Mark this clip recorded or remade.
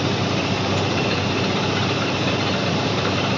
remade